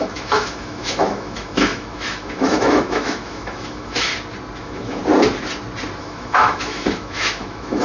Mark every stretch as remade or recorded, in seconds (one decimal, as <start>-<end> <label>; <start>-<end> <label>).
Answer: 0.0-4.1 remade; 4.1-4.6 recorded; 4.6-5.0 remade; 5.0-6.0 recorded; 6.0-7.8 remade